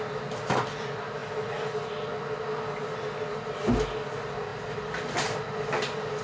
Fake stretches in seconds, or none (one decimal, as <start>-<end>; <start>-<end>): none